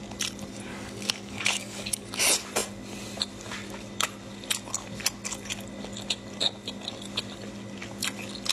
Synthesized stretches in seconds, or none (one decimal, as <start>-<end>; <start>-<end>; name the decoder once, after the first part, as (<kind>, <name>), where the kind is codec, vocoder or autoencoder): 0.7-2.2 (codec, DAC)